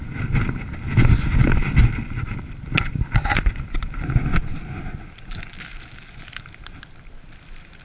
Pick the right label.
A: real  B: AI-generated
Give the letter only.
A